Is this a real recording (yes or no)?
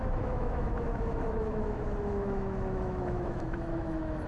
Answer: no